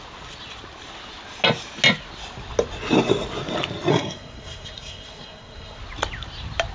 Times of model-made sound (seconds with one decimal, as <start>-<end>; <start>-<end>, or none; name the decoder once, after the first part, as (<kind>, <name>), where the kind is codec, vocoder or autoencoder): 3.9-5.8 (codec, SNAC)